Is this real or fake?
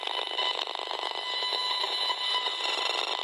fake